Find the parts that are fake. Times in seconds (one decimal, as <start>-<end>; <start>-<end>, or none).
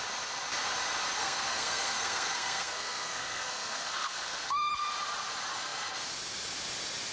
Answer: 1.2-4.7